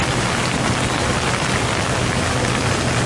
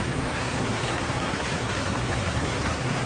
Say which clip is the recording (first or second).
first